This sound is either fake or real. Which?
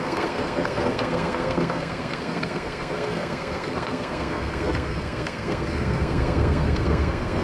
fake